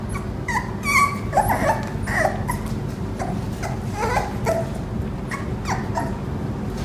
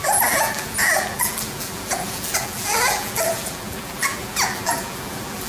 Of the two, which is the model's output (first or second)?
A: second